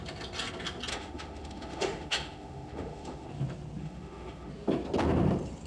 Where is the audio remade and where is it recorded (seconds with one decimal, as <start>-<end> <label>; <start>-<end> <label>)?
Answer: 0.0-0.9 recorded; 0.9-3.3 remade; 3.3-3.8 recorded; 3.8-4.5 remade; 4.5-5.7 recorded